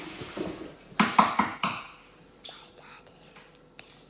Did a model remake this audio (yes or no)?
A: no